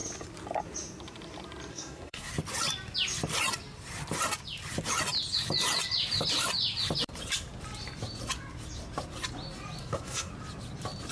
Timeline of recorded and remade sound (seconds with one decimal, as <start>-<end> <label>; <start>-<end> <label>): 0.0-1.7 recorded; 1.7-2.3 remade; 2.3-9.8 recorded; 9.8-10.3 remade; 10.3-11.1 recorded